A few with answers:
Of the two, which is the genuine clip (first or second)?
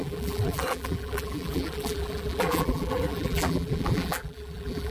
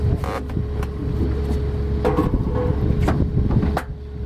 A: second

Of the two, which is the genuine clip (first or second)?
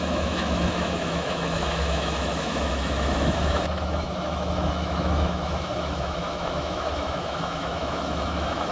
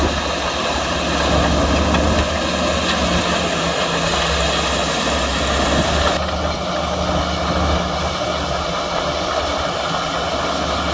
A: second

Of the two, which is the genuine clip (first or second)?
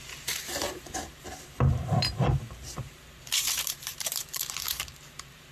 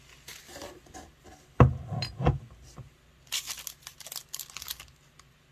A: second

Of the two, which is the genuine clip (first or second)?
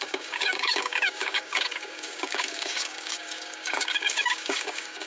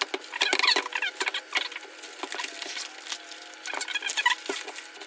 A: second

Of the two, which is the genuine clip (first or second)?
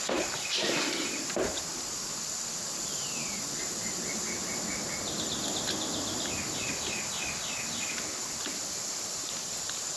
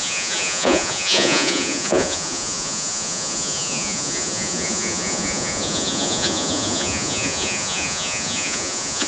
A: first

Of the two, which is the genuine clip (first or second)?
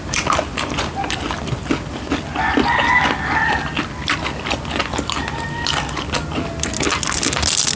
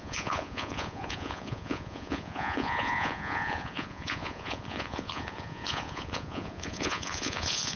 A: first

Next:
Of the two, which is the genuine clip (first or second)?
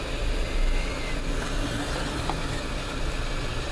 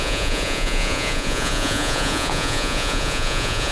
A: first